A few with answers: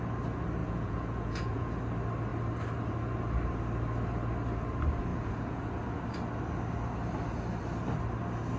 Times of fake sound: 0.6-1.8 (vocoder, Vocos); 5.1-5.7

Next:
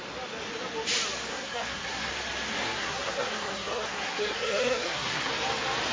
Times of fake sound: 1.3-2.1 (codec, SNAC); 2.5-5.3

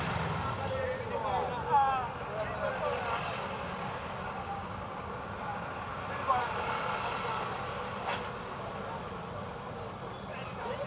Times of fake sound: none

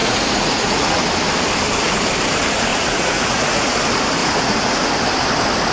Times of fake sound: 0.0-1.0 (vocoder, Vocos); 2.7-3.8; 4.2-4.9

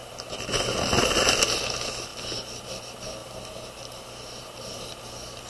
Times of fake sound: 2.1-2.8 (vocoder, BigVGAN v2); 3.2-4.4